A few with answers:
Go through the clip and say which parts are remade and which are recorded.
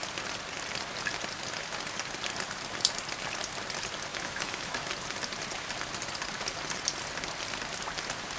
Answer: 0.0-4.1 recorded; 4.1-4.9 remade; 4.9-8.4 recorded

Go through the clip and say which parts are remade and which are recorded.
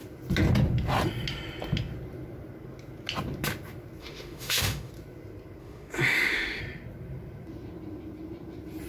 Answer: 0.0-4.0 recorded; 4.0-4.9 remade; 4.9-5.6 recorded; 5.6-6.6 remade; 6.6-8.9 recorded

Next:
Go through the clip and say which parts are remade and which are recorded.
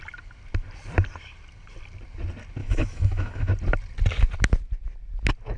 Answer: 0.0-2.6 recorded; 2.6-3.5 remade; 3.5-5.6 recorded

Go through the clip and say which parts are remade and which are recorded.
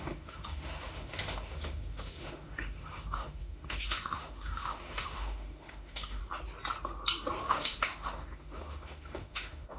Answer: 0.0-6.2 remade; 6.2-7.4 recorded; 7.4-9.8 remade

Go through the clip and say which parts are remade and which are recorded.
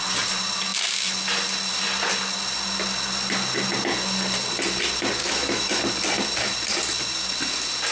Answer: 0.0-5.2 recorded; 5.2-5.8 remade; 5.8-7.9 recorded